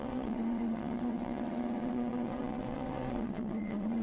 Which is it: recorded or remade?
remade